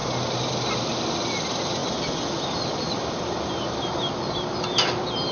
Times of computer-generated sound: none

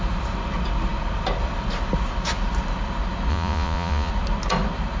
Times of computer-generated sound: 3.3-4.1

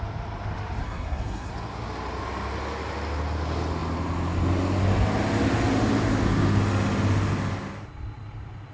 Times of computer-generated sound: 0.8-1.5

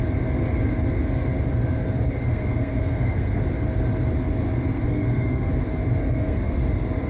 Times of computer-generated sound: 2.2-3.4; 4.7-5.5; 6.0-6.6

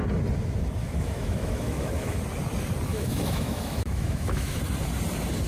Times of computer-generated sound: 0.8-2.2; 2.9-4.6

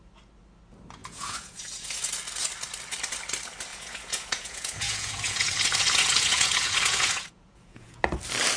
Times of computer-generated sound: 1.0-2.1; 3.7-8.0

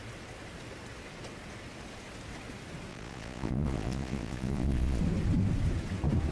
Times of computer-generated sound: 2.9-5.0